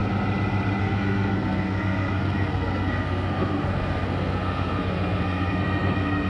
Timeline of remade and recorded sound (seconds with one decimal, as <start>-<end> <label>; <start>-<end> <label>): 0.0-0.8 recorded; 0.8-6.3 remade